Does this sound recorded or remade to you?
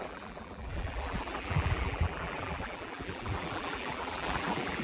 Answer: remade